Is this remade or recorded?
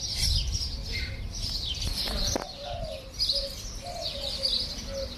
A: recorded